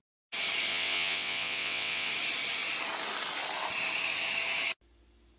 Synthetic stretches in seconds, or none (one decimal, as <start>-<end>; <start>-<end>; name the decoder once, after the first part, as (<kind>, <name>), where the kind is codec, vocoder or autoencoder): 0.7-2.1 (vocoder, WaveNeXt)